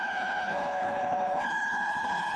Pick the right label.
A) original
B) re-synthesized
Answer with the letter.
B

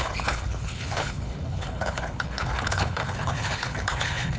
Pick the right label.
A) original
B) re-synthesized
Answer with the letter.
B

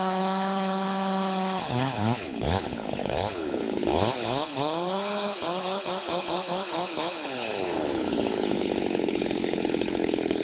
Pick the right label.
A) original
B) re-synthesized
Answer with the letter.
B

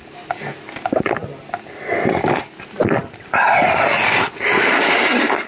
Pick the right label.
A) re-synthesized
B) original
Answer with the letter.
B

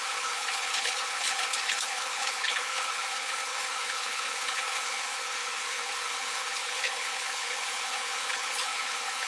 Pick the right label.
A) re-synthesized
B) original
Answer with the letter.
A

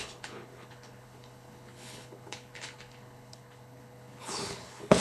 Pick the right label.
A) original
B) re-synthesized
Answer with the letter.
B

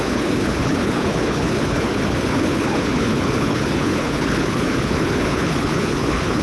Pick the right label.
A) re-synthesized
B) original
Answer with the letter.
A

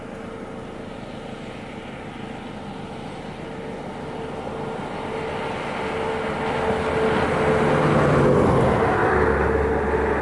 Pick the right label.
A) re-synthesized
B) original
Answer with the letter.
B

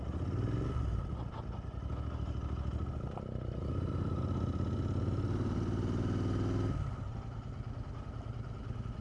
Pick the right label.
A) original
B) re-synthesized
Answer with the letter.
A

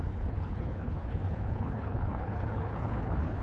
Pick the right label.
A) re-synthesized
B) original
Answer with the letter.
A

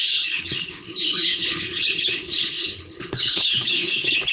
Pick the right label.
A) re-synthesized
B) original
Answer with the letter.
A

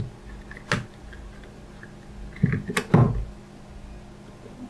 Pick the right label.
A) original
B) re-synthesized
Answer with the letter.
A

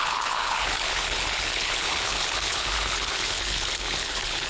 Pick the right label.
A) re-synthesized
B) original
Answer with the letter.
A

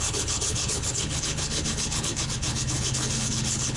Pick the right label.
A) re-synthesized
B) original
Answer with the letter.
A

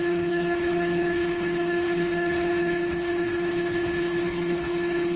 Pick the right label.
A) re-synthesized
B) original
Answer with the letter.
A